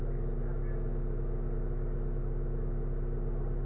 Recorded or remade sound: recorded